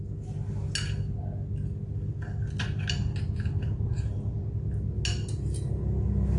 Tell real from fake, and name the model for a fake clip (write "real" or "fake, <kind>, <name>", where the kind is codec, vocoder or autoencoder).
real